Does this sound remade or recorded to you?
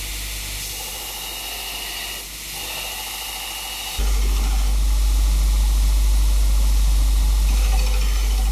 recorded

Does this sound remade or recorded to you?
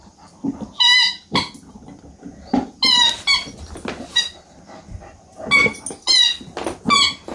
recorded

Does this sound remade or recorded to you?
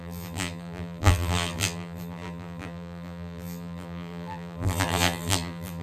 remade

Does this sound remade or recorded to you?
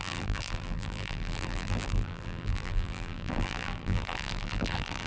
remade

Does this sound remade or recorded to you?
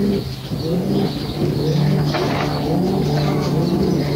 recorded